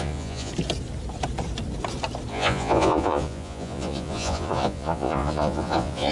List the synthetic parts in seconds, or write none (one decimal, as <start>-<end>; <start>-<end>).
0.0-0.5; 2.3-6.1